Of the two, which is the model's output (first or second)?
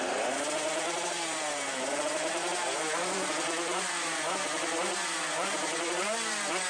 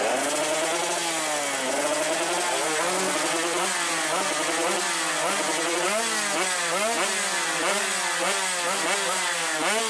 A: first